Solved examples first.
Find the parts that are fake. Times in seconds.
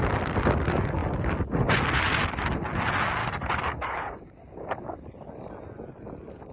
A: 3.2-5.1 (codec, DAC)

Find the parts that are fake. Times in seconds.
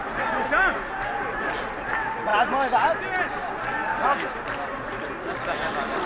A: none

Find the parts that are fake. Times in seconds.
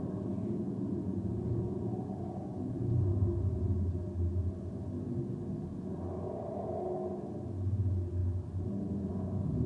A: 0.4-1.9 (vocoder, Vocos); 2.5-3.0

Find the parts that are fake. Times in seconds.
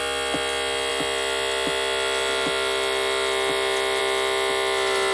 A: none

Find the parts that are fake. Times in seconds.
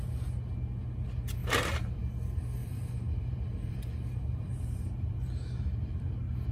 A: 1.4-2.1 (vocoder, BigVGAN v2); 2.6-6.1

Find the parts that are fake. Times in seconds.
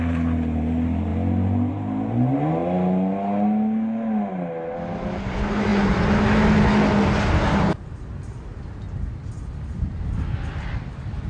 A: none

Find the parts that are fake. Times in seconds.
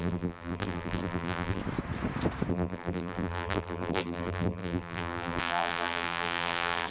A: 0.0-1.6 (vocoder, BigVGAN v2); 2.5-6.9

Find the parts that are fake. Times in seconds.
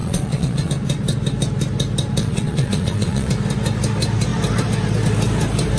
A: 0.0-0.7 (vocoder, Vocos); 2.2-3.3